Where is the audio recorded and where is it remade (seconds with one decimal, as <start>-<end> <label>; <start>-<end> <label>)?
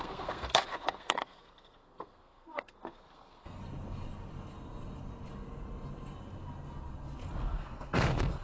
0.0-3.6 remade; 3.6-7.5 recorded; 7.5-8.4 remade